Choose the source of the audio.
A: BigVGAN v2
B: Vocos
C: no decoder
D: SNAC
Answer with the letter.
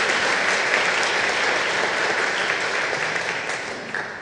A